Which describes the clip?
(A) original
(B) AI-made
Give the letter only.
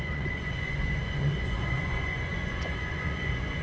B